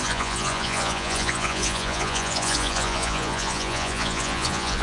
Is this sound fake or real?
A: fake